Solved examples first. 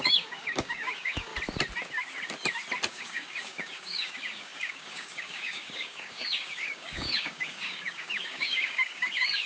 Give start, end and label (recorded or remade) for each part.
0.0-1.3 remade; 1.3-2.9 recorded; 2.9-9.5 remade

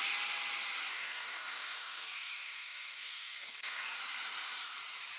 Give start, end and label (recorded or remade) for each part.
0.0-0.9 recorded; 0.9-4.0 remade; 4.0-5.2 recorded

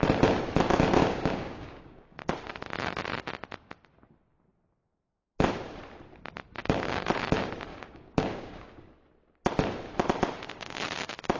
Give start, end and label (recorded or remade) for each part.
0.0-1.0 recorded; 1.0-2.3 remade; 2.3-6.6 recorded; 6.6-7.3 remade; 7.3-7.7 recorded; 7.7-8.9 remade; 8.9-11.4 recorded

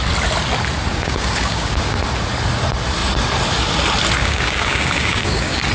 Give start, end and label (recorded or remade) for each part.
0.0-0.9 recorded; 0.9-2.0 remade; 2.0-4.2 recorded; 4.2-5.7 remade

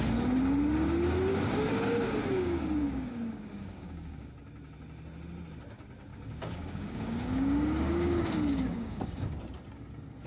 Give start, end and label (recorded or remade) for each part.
0.0-1.3 recorded; 1.3-4.3 remade; 4.3-6.1 recorded; 6.1-9.4 remade; 9.4-10.3 recorded

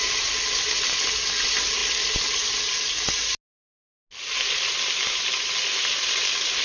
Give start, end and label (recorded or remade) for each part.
0.0-6.6 recorded

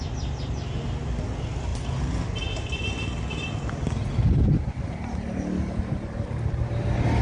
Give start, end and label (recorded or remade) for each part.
0.0-7.2 recorded